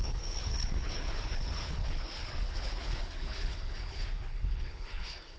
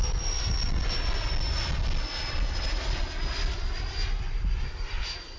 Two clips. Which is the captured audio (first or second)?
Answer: second